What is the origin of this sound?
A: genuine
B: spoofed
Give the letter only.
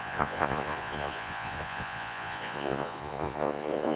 B